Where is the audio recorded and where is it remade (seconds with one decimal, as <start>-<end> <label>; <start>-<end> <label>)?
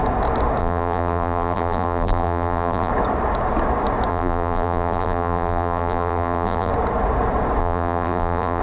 0.0-0.6 recorded; 0.6-2.9 remade; 2.9-4.1 recorded; 4.1-6.7 remade; 6.7-7.6 recorded; 7.6-8.6 remade